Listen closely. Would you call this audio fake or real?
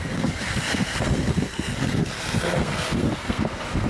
fake